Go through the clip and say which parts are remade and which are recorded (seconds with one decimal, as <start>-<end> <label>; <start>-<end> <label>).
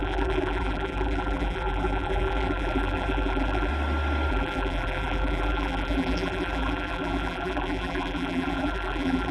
0.0-3.7 remade; 3.7-4.3 recorded; 4.3-9.3 remade